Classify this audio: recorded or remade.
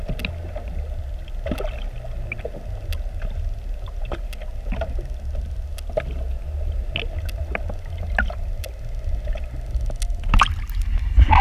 recorded